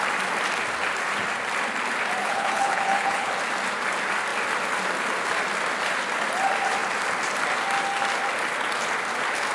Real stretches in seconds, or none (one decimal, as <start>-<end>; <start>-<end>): 0.0-2.2; 3.3-9.5